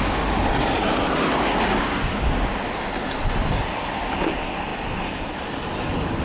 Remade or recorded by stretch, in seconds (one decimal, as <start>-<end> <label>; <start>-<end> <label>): 0.0-6.2 recorded